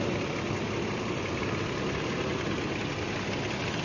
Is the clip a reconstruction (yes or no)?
no